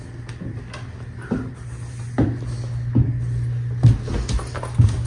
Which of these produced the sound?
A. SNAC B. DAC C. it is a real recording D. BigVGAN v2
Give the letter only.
C